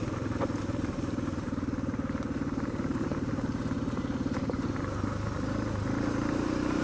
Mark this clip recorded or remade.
remade